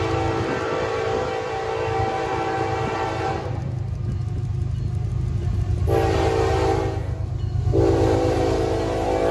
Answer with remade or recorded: recorded